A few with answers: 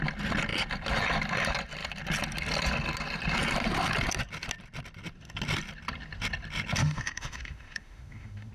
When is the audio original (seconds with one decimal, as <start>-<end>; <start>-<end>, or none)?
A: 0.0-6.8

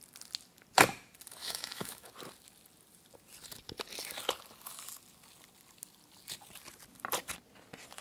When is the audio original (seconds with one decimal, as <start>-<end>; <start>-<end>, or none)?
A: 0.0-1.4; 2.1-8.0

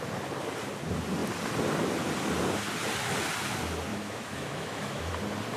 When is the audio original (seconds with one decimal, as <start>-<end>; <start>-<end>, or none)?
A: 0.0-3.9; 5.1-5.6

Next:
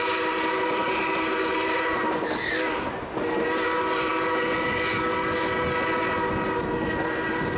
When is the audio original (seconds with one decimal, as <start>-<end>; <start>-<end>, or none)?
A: 0.0-7.6

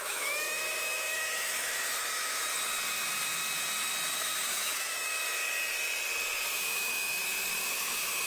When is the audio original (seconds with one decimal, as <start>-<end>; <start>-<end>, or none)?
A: 2.5-4.2; 5.1-6.5

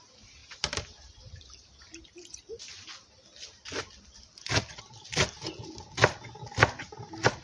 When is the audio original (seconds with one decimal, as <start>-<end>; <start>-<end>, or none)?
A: 0.0-7.4

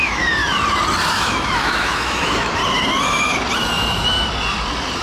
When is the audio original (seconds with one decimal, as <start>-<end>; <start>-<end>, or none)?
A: 0.4-1.1; 2.6-5.0